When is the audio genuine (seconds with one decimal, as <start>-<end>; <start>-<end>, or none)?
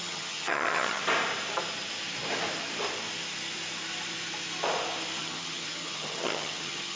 1.0-5.2